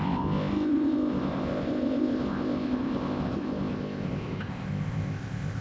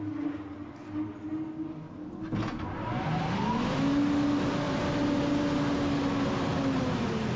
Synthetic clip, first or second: first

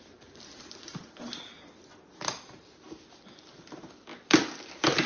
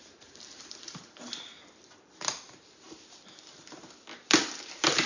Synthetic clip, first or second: second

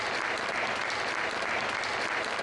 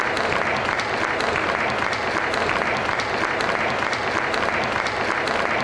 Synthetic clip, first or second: first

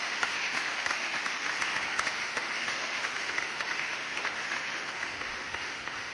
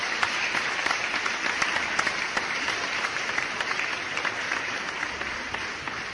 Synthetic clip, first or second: first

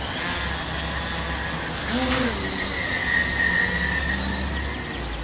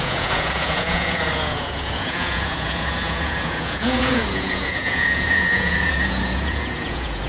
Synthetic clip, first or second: second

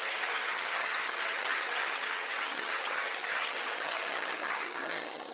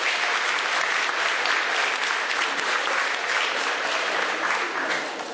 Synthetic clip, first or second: first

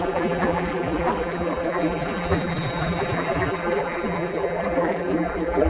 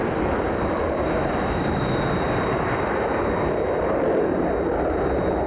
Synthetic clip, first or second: first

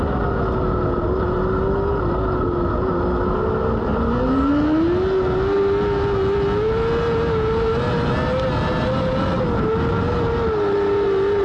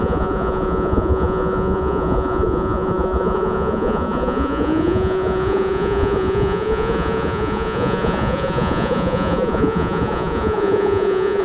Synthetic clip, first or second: second